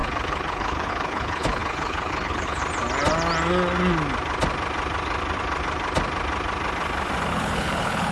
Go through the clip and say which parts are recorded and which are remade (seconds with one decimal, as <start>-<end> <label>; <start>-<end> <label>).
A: 0.0-2.6 remade; 2.6-7.3 recorded; 7.3-8.1 remade